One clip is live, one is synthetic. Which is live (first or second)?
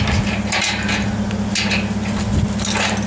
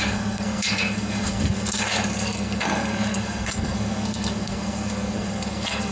first